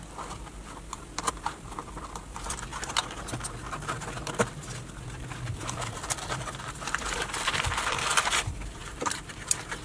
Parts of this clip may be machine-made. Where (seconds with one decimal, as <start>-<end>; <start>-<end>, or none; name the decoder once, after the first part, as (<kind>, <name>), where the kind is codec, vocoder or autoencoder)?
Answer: 0.0-2.7 (vocoder, BigVGAN v2); 5.9-9.8